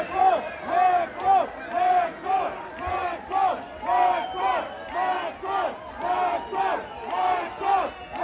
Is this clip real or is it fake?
real